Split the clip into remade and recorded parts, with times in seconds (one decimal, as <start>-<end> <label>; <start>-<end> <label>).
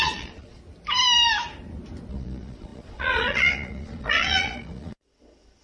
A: 0.0-0.6 remade; 0.6-2.1 recorded; 2.1-5.6 remade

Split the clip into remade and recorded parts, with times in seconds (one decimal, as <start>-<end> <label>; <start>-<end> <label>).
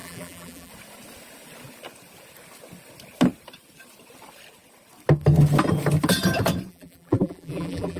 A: 0.0-0.7 remade; 0.7-6.7 recorded; 6.7-8.0 remade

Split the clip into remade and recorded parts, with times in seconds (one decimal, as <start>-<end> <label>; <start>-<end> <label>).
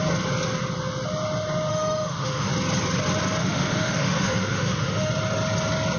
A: 0.0-1.7 recorded; 1.7-2.5 remade; 2.5-3.4 recorded; 3.4-5.1 remade; 5.1-6.0 recorded